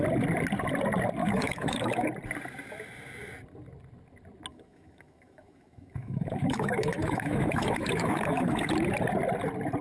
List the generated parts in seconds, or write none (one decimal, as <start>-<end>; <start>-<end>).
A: 1.2-2.1; 4.5-8.7